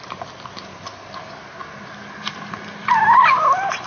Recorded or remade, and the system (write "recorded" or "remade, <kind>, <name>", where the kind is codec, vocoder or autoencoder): recorded